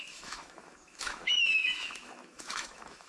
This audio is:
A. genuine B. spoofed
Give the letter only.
B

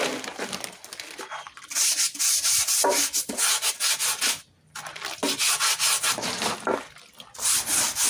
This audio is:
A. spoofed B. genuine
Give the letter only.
B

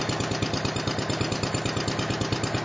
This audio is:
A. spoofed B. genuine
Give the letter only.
B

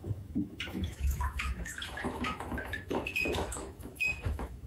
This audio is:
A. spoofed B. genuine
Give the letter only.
A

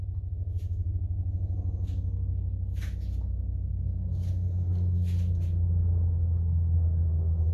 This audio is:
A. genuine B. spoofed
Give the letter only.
A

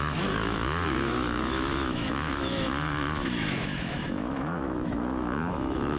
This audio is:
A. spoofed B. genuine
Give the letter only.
A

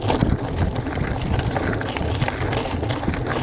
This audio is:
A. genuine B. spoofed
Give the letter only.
A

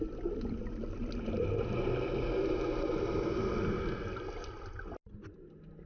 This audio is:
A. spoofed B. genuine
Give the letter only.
B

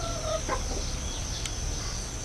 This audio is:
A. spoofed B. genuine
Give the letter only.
B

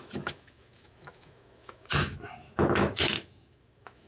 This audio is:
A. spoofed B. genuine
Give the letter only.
A